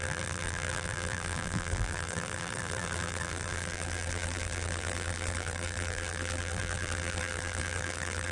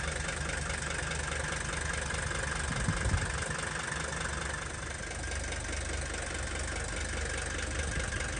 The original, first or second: second